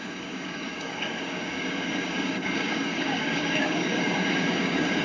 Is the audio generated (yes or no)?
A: yes